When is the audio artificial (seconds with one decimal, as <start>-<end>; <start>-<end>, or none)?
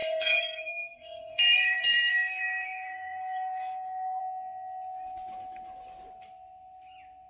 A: 0.0-4.2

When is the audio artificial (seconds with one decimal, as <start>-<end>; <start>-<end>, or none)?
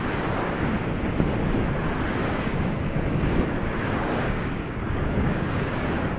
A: 2.2-6.2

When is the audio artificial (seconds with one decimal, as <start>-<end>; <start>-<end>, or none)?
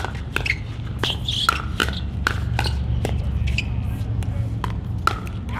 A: none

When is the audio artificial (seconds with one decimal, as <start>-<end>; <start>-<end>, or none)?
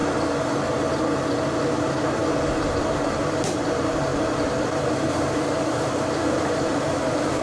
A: 1.7-2.2; 2.8-7.4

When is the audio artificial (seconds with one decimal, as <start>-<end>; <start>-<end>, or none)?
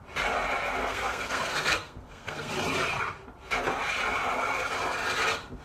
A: 0.8-2.5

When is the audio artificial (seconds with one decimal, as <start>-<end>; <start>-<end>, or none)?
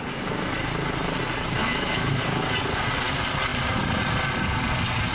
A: 1.6-2.2